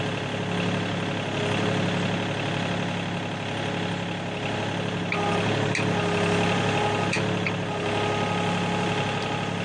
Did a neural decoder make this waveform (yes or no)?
no